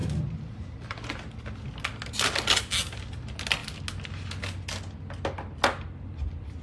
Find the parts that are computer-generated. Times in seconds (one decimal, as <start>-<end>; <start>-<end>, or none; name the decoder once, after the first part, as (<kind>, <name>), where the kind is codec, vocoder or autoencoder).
0.0-1.0 (vocoder, BigVGAN v2)

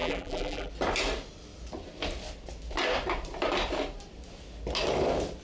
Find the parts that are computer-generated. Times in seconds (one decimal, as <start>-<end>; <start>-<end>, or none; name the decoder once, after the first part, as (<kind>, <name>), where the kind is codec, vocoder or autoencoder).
0.0-0.7 (vocoder, BigVGAN v2)

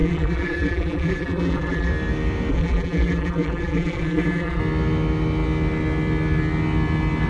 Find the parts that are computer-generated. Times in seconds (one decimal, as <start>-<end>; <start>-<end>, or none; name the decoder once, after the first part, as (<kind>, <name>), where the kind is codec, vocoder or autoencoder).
0.0-1.9 (vocoder, BigVGAN v2); 2.5-4.6

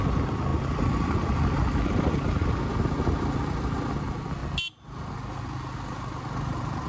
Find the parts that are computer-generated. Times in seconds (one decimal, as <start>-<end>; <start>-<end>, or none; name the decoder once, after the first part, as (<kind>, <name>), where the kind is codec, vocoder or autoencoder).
0.5-3.2 (vocoder, BigVGAN v2)

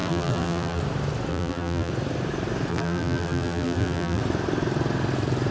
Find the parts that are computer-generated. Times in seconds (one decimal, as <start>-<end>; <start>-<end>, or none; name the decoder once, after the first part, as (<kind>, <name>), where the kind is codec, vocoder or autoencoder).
0.0-0.8 (vocoder, BigVGAN v2); 1.3-1.9; 2.7-4.2